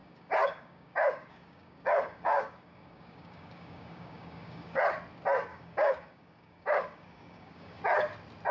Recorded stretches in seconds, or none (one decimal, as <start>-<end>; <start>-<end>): 4.8-5.5; 7.8-8.5